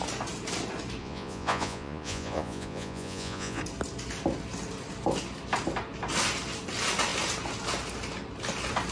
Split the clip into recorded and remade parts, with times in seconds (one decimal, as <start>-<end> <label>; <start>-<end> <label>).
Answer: 0.0-1.0 recorded; 1.0-3.6 remade; 3.6-8.9 recorded